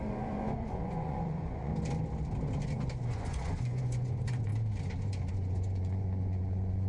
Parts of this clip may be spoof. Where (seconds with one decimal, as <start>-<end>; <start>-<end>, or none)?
0.0-1.7; 3.1-4.5; 5.3-6.9